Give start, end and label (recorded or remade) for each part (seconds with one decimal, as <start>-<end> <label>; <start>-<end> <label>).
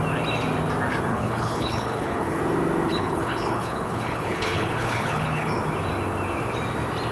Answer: 0.0-1.1 recorded; 1.1-2.4 remade; 2.4-2.9 recorded; 2.9-5.6 remade; 5.6-7.1 recorded